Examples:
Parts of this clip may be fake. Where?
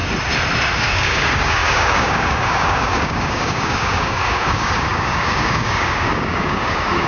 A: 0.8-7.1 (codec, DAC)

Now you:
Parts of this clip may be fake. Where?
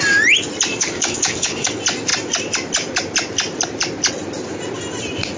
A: 0.7-1.7 (codec, DAC)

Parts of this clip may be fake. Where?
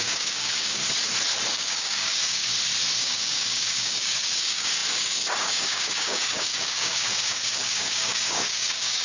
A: 0.0-0.8 (codec, DAC); 1.5-2.5; 3.0-9.0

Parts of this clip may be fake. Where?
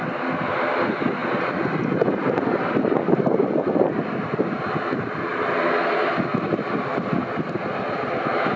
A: none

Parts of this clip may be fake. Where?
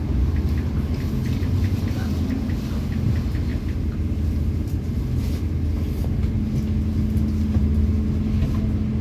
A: none